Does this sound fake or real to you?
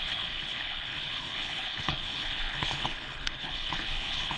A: fake